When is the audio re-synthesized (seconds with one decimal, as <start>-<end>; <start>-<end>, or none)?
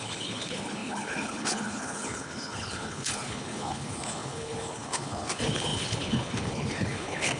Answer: 0.0-7.4